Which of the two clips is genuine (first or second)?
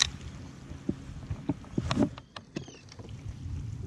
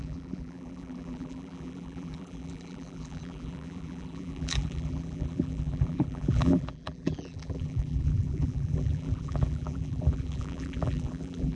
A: first